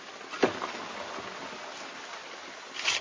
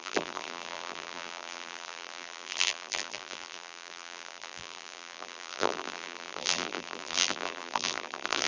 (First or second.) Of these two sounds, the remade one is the second